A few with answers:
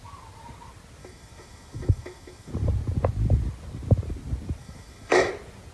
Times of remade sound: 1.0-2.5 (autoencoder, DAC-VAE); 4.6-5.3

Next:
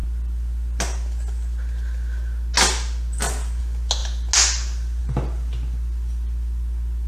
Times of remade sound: none